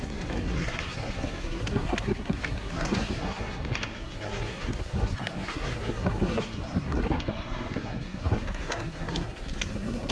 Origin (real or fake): fake